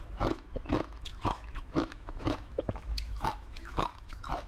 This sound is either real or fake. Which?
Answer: fake